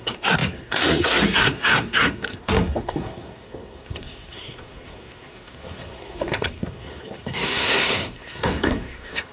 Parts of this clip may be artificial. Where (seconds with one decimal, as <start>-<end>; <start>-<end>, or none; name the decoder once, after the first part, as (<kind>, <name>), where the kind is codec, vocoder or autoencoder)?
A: 0.0-9.3 (codec, SNAC)